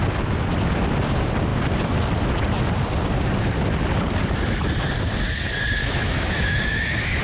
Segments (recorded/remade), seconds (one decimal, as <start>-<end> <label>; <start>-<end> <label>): 0.0-5.8 recorded; 5.8-7.2 remade